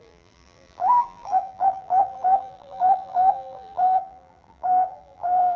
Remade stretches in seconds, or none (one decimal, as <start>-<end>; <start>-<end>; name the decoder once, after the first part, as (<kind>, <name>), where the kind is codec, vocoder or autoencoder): 0.0-5.6 (vocoder, BigVGAN v2)